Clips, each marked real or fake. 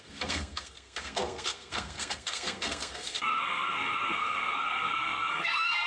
fake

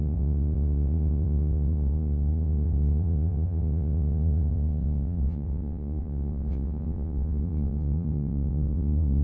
fake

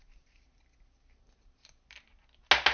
real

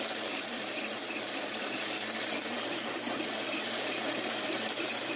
fake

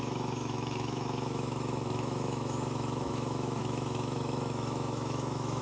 fake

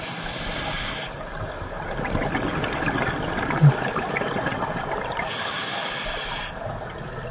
fake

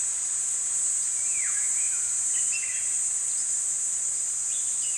real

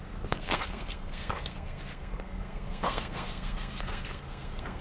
fake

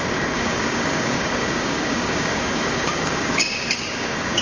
fake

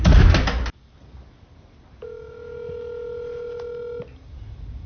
real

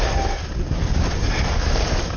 real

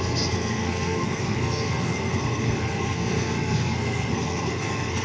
fake